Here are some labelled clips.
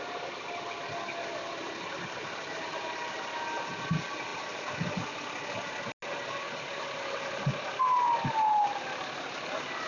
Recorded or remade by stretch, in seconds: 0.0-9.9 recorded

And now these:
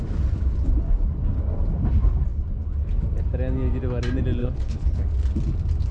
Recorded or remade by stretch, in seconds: 0.0-4.4 recorded; 4.4-5.0 remade; 5.0-5.9 recorded

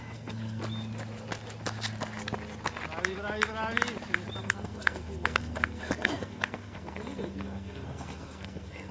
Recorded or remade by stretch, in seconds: 0.0-0.6 remade; 0.6-4.4 recorded; 4.4-8.9 remade

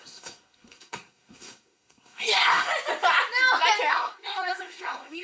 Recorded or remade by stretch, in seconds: 0.0-2.7 remade; 2.7-3.9 recorded; 3.9-5.2 remade

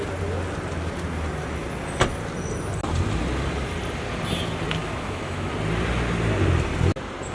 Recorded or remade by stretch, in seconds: 0.0-4.8 recorded; 4.8-5.5 remade; 5.5-7.3 recorded